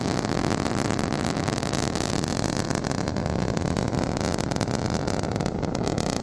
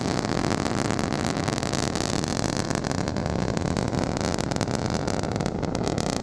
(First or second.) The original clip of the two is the second